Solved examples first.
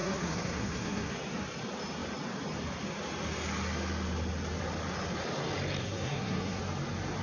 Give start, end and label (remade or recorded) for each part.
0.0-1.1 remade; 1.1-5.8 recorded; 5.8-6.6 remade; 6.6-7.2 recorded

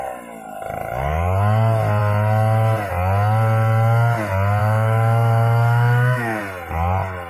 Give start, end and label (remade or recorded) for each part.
0.0-4.6 recorded; 4.6-6.4 remade; 6.4-7.3 recorded

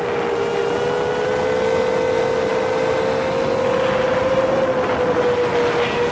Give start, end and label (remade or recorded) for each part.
0.0-6.1 recorded

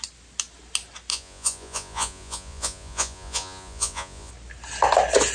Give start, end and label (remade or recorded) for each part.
0.0-1.1 recorded; 1.1-4.3 remade; 4.3-5.3 recorded

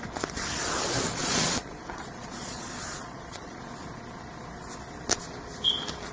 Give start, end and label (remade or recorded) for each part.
0.0-1.2 recorded; 1.2-3.6 remade; 3.6-6.1 recorded